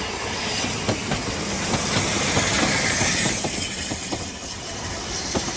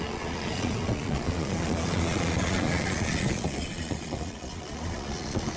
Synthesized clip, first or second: second